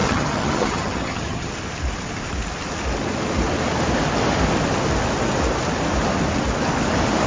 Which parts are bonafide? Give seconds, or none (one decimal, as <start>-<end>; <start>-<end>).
1.5-7.3